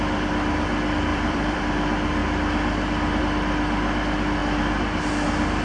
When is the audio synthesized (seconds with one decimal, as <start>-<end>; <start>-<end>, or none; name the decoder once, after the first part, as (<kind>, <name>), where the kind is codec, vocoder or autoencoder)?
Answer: 1.1-1.6 (vocoder, BigVGAN v2)